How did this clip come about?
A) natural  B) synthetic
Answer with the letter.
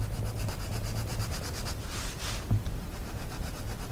A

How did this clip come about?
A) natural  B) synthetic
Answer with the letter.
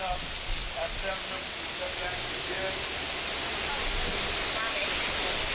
A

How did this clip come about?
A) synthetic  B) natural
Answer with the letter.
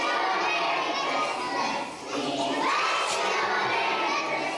B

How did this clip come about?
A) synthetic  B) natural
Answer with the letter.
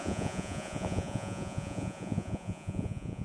A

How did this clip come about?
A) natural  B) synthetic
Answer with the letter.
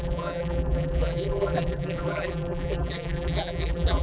B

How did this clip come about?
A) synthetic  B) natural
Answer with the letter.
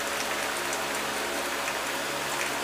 B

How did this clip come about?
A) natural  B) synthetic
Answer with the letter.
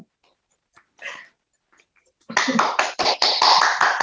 A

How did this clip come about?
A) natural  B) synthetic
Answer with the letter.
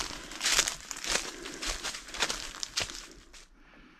A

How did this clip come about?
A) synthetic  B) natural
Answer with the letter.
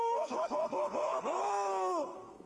A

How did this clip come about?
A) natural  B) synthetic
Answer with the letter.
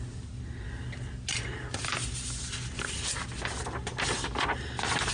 A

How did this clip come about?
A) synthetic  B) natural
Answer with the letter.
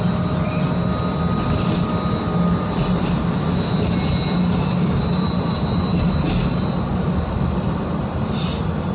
B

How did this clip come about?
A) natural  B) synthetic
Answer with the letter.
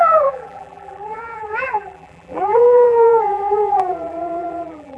B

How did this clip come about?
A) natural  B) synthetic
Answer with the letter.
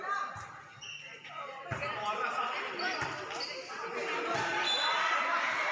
A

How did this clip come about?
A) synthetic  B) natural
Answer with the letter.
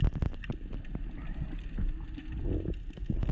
B